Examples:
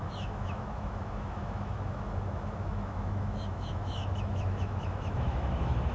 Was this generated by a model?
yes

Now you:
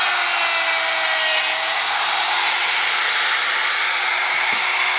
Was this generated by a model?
no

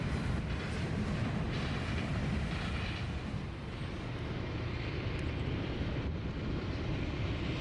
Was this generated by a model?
yes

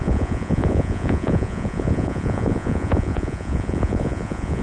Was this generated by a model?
yes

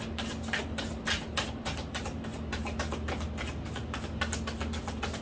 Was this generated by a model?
no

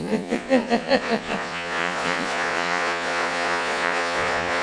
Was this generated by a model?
yes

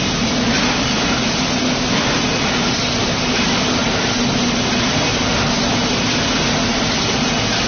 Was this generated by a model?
no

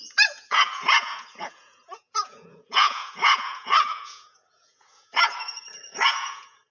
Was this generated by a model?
yes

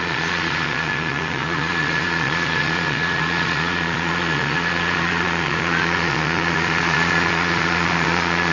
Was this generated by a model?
yes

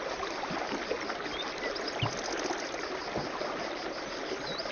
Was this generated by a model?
no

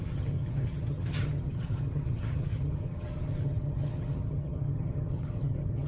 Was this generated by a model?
yes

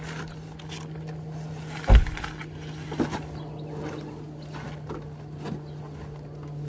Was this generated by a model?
no